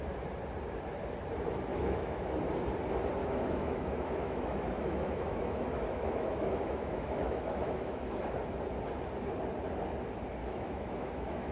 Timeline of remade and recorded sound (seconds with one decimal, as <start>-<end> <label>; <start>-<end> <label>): 0.0-1.7 recorded; 1.7-2.4 remade; 2.4-3.2 recorded; 3.2-8.2 remade; 8.2-10.4 recorded; 10.4-11.5 remade